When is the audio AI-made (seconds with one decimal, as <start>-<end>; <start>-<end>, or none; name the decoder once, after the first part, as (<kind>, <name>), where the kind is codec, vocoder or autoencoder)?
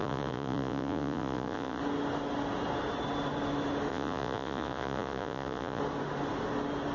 0.0-1.8 (vocoder, Vocos); 3.9-5.8